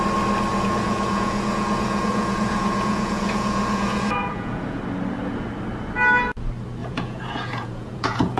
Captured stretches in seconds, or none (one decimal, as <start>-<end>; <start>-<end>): 0.0-0.5; 4.8-6.8